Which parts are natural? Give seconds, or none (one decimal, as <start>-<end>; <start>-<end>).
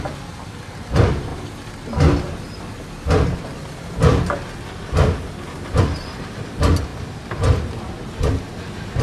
0.0-9.0